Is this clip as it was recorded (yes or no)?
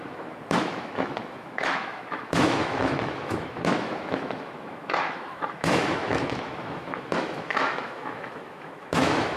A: no